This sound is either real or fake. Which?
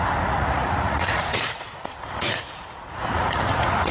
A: fake